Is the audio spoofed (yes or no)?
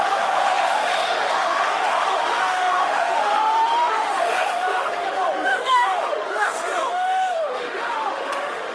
yes